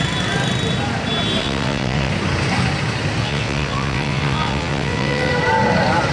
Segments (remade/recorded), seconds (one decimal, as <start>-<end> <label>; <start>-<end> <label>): 0.0-1.4 recorded; 1.4-2.1 remade; 2.1-3.2 recorded; 3.2-5.3 remade; 5.3-6.1 recorded

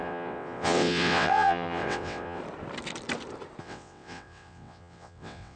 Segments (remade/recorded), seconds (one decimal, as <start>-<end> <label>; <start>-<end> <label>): 0.0-2.4 remade; 2.4-3.6 recorded; 3.6-5.6 remade

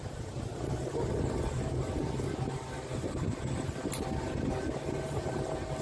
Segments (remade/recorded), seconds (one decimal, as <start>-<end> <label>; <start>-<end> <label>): 0.0-5.8 recorded

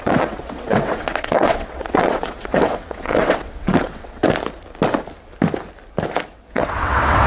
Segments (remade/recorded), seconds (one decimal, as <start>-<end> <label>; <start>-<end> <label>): 0.0-4.2 remade; 4.2-6.3 recorded; 6.3-7.3 remade